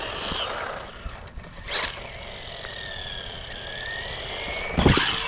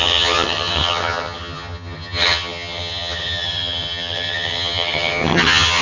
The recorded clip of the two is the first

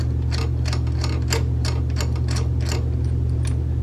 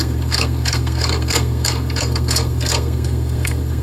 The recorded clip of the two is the first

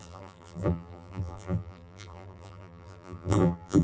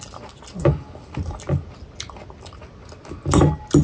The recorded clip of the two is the second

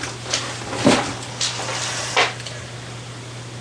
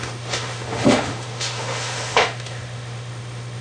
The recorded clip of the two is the first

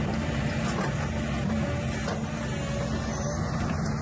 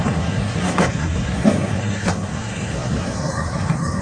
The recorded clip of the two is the first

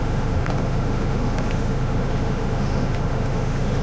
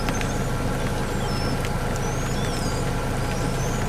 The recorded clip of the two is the second